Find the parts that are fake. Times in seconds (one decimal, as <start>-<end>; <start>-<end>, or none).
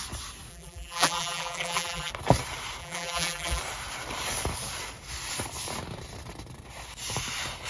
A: 0.5-2.1; 2.8-3.6